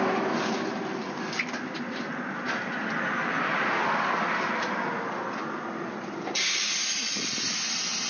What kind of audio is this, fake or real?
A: real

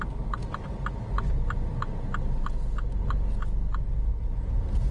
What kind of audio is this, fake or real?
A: real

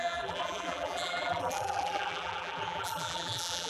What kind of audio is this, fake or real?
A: fake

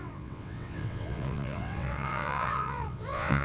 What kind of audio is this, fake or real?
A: fake